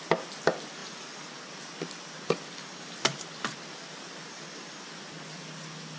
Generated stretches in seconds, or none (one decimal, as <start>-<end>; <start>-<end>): none